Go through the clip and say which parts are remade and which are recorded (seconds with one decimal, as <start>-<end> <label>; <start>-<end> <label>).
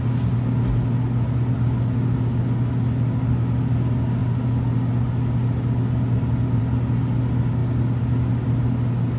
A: 0.0-9.2 recorded